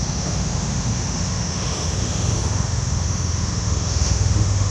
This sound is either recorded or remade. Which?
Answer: remade